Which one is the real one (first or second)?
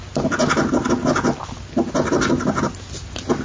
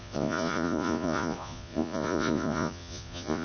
first